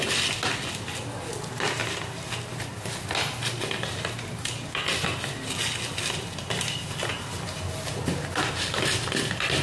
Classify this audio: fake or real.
real